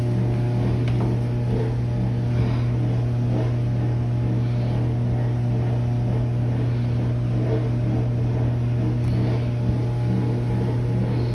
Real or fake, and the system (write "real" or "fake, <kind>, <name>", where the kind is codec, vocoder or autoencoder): real